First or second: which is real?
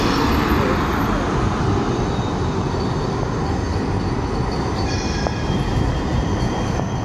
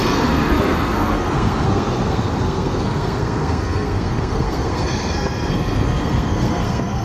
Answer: first